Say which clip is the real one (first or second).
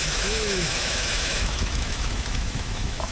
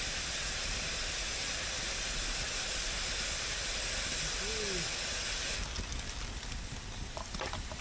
second